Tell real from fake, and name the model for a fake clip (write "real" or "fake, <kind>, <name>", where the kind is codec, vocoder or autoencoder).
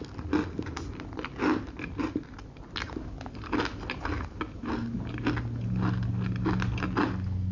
real